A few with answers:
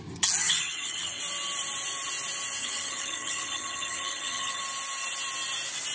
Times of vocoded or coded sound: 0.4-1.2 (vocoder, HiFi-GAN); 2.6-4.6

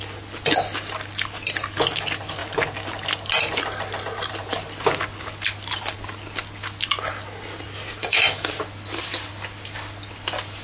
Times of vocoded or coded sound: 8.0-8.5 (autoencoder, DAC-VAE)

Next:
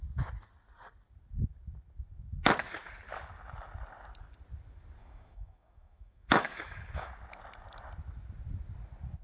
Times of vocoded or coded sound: 5.0-7.1 (autoencoder, DAC-VAE)

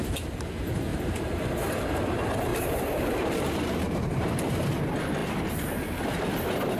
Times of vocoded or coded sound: 0.9-1.4 (vocoder, BigVGAN v2); 2.5-4.8